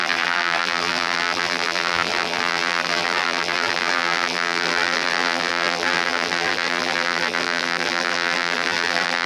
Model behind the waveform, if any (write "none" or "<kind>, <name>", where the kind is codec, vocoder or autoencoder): vocoder, BigVGAN v2